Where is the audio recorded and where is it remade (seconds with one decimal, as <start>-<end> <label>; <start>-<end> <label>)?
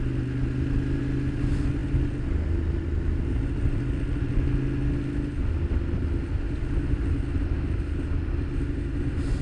0.0-9.4 recorded